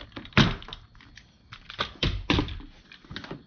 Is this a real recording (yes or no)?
yes